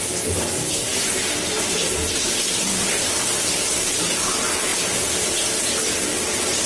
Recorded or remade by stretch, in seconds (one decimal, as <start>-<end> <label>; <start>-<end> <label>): 0.0-0.9 recorded; 0.9-4.3 remade; 4.3-4.7 recorded; 4.7-5.8 remade; 5.8-6.7 recorded